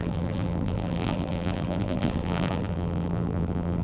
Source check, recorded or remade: remade